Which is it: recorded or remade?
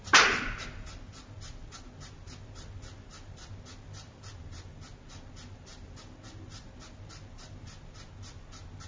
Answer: recorded